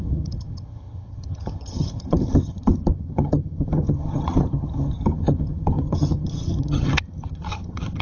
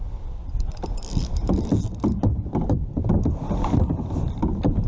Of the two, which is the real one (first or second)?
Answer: second